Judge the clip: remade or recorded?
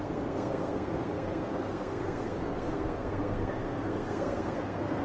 remade